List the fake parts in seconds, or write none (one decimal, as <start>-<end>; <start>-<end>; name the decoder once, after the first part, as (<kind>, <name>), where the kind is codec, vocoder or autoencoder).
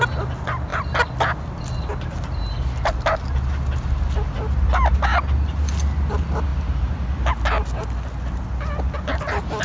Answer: none